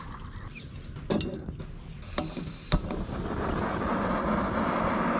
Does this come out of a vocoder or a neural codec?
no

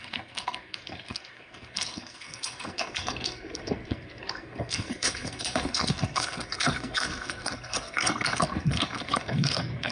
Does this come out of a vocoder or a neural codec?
yes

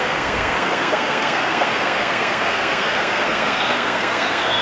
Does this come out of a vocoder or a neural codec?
yes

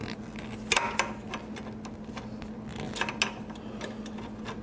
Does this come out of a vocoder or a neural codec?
no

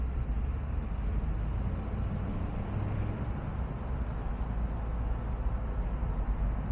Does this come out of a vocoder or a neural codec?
no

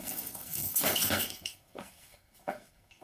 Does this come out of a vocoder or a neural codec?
yes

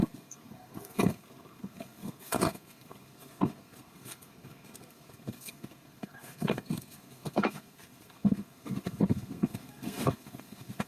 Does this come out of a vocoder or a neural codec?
yes